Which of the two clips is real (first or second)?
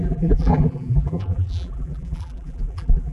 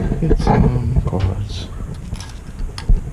second